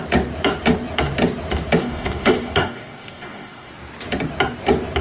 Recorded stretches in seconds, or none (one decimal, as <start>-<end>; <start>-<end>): 0.0-1.8; 3.7-5.0